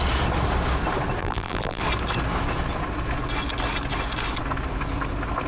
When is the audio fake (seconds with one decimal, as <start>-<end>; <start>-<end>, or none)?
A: 1.2-1.8